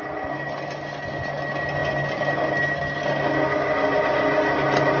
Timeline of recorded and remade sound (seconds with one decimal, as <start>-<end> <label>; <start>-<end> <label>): 0.0-5.0 recorded